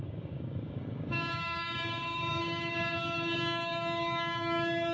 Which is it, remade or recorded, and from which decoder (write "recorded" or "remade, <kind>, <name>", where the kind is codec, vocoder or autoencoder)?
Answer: remade, codec, DAC